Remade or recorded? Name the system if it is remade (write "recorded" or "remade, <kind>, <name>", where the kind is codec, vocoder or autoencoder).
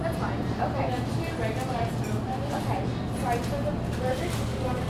recorded